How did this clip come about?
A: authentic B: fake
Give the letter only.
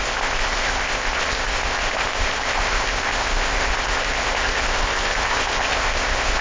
B